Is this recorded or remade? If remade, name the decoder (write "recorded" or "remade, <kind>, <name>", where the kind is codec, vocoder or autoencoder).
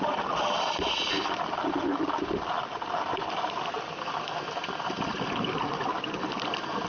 recorded